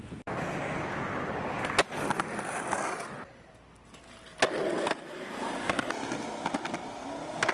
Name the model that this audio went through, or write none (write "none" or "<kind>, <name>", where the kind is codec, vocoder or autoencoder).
none